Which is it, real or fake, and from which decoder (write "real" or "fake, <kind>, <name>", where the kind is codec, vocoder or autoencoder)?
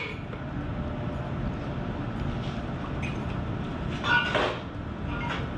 real